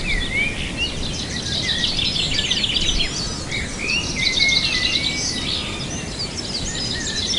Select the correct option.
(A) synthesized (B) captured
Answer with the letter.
B